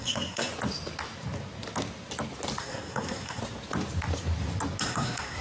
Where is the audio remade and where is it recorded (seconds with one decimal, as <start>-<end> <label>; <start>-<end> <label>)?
0.0-0.5 remade; 0.5-2.6 recorded; 2.6-3.4 remade; 3.4-4.8 recorded; 4.8-5.4 remade